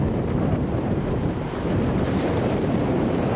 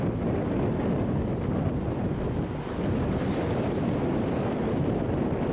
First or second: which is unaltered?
second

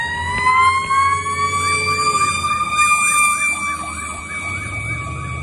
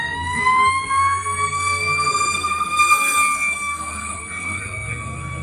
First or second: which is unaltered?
first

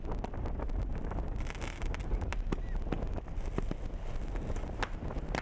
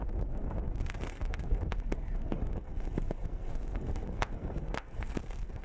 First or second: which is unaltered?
first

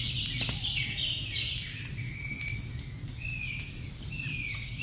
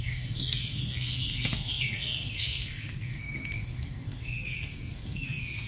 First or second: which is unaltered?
first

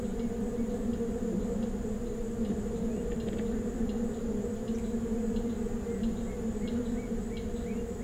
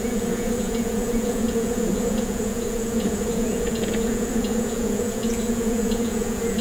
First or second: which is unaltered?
first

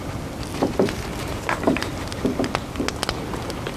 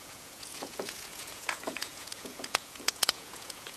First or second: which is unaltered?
first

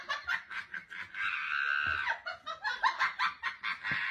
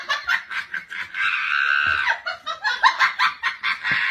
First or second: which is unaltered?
first